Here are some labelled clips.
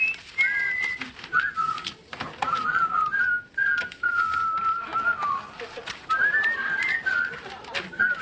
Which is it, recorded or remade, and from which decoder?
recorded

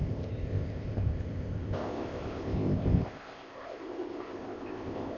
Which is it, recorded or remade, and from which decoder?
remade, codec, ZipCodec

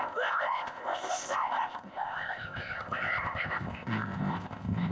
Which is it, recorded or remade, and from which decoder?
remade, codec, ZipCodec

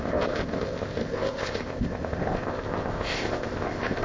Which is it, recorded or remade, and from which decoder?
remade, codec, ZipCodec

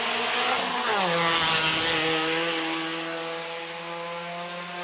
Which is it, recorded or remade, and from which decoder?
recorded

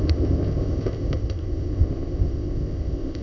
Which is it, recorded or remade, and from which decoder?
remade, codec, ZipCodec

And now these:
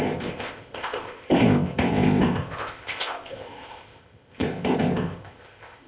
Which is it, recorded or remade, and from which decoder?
remade, codec, ZipCodec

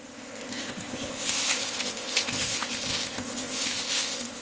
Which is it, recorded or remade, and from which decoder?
remade, codec, ZipCodec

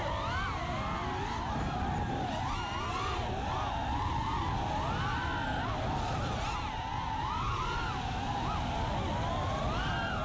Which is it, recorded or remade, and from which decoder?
recorded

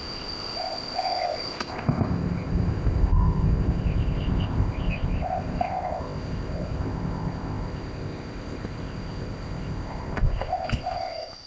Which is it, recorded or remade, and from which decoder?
remade, codec, ZipCodec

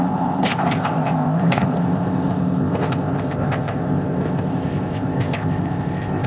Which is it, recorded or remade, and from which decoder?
remade, codec, ZipCodec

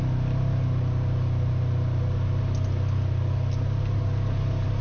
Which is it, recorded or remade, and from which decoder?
recorded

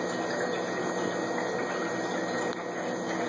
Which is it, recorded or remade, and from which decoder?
recorded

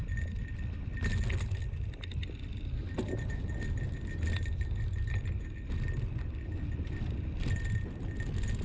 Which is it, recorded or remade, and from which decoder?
recorded